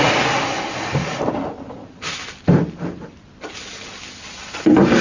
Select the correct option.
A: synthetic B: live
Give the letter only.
B